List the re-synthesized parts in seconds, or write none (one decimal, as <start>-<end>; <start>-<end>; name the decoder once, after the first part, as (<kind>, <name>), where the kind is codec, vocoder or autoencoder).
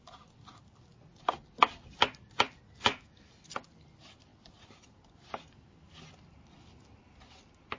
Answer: 2.8-3.3 (autoencoder, DAC-VAE)